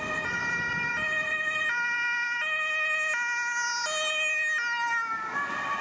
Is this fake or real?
real